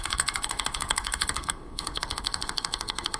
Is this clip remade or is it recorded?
remade